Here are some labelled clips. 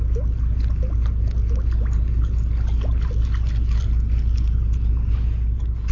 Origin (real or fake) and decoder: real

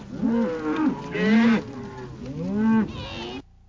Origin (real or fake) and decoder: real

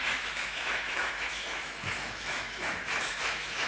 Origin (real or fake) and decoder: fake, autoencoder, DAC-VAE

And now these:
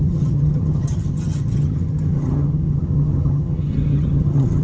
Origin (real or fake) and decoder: fake, vocoder, HiFi-GAN